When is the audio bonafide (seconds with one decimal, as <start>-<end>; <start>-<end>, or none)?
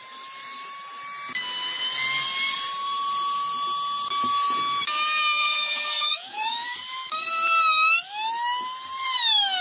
0.0-5.4; 6.8-9.6